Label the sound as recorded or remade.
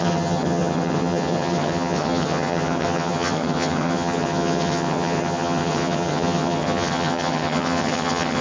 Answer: remade